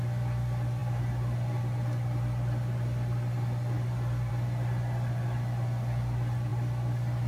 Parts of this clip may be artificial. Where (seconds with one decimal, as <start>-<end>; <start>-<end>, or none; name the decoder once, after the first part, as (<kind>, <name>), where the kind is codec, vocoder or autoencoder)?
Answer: none